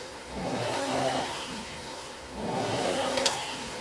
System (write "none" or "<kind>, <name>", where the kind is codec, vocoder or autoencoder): codec, SNAC